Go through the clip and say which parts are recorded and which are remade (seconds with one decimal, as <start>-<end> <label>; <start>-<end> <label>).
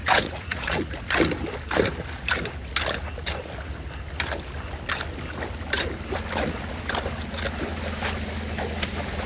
0.0-1.1 remade; 1.1-9.3 recorded